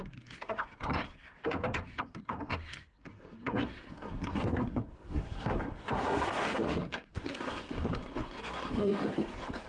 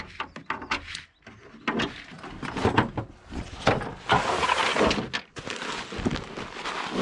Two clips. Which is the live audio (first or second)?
second